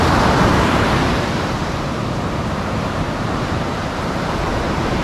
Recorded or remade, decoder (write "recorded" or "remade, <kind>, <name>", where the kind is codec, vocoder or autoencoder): remade, vocoder, BigVGAN v2